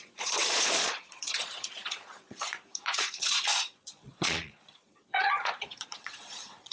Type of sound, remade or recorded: remade